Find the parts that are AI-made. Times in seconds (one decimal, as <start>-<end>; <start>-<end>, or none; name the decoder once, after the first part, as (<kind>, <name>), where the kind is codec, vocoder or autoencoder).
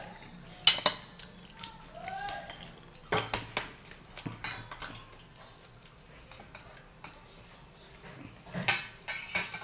none